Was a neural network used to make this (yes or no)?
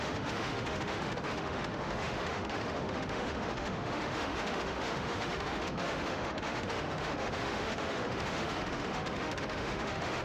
yes